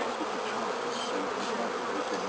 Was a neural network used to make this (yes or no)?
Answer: no